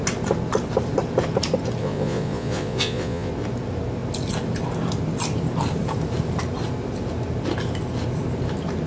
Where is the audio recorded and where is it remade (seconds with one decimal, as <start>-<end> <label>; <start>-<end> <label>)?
0.0-1.8 recorded; 1.8-3.3 remade; 3.3-8.9 recorded